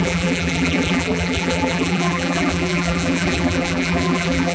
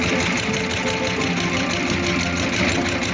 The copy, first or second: first